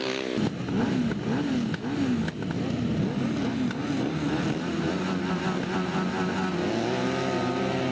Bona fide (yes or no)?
yes